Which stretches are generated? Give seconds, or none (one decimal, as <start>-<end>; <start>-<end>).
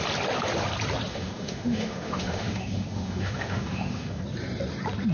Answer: 1.1-4.2